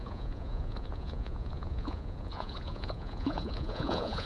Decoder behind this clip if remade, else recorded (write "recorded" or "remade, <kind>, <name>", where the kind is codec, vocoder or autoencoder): remade, vocoder, Vocos